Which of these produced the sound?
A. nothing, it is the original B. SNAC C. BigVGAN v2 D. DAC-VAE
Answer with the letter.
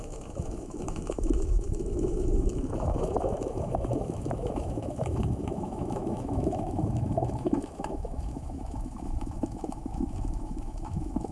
D